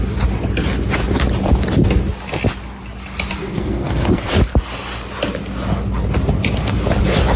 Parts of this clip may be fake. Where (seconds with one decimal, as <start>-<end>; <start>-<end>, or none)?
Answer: 3.4-4.3